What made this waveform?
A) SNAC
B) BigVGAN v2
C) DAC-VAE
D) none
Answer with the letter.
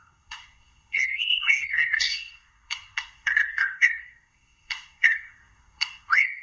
A